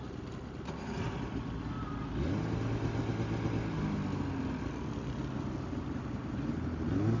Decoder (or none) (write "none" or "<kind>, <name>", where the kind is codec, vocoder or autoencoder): none